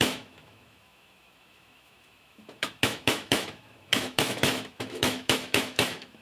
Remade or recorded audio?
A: remade